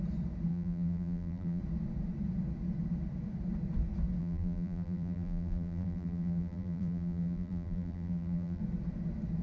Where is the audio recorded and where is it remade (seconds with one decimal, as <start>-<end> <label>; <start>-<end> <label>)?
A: 0.0-0.5 recorded; 0.5-1.6 remade; 1.6-4.2 recorded; 4.2-8.6 remade; 8.6-9.4 recorded